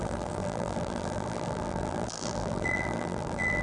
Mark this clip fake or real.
fake